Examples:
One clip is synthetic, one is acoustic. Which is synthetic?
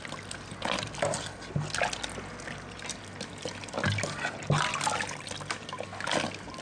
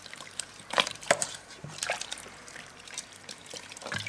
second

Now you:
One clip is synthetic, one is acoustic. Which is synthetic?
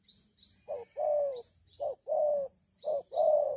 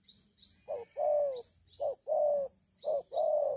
first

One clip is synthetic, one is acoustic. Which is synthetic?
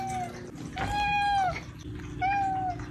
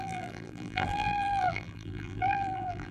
second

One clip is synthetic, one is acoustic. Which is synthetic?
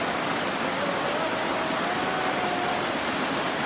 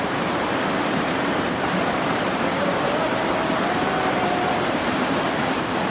second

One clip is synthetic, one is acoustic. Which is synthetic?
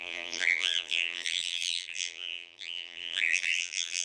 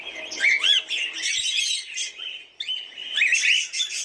first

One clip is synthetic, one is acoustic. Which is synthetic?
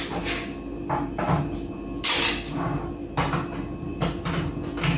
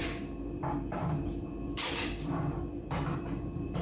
second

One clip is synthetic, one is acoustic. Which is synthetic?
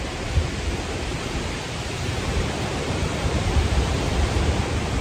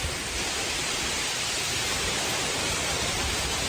first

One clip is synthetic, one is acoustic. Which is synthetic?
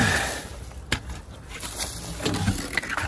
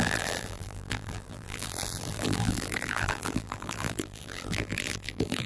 second